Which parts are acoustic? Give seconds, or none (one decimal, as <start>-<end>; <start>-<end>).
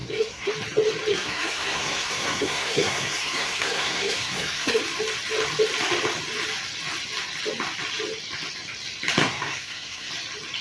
0.5-1.1; 4.8-9.2; 10.1-10.6